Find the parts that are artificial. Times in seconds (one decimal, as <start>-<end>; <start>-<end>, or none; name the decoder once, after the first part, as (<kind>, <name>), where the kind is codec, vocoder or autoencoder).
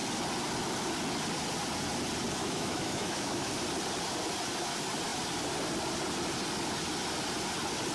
2.4-3.5 (autoencoder, DAC-VAE)